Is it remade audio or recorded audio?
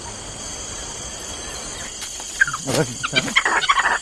recorded